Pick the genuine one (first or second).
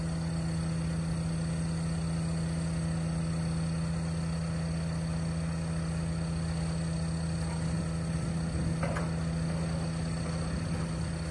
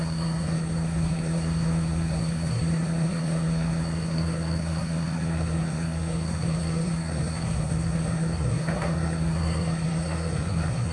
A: first